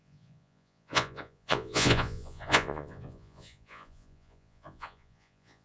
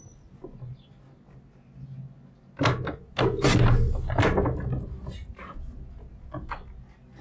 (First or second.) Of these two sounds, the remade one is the first